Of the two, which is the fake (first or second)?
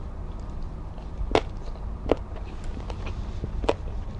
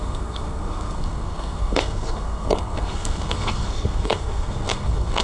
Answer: second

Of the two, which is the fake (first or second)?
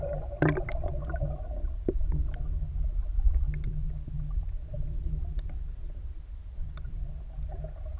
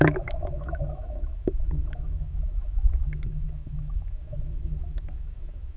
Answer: second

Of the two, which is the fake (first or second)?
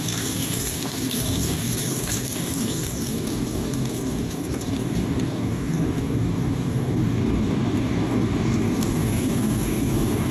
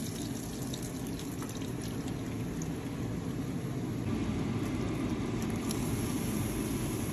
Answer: first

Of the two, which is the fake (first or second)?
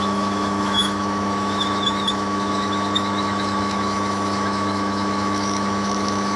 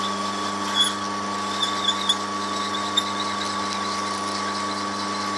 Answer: first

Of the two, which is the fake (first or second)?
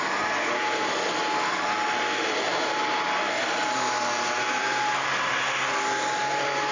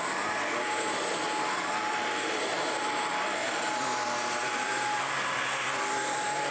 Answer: second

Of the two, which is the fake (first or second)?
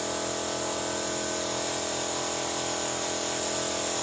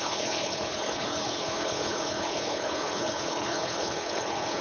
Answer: second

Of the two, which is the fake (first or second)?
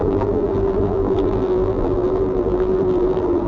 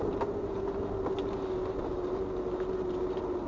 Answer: first